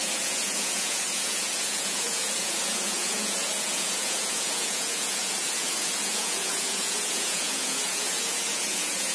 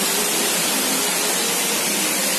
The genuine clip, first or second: second